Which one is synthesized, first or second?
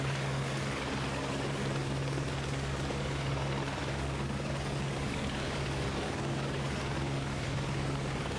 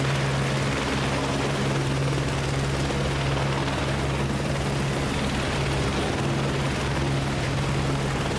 first